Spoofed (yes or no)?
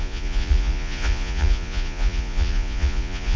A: yes